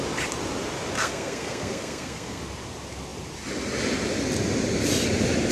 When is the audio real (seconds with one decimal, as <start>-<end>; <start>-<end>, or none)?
0.0-1.0; 2.4-5.5